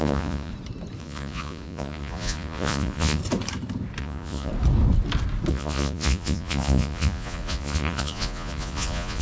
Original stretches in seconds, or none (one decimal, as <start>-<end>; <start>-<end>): 0.5-1.0; 3.2-4.0; 4.5-5.5

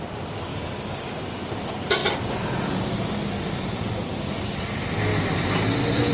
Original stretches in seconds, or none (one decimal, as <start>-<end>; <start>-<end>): 0.0-0.5; 1.2-6.1

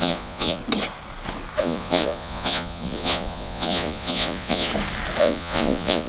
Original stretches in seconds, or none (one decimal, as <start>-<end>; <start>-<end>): 0.6-1.6; 4.7-5.2

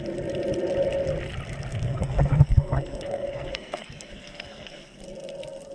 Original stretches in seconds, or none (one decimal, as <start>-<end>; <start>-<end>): 0.0-1.7; 5.0-5.7

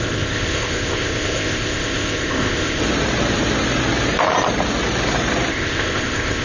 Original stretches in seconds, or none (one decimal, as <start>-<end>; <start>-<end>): 2.8-5.5

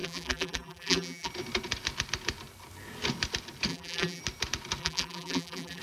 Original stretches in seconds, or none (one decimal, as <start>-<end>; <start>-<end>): 1.3-3.7; 4.2-4.8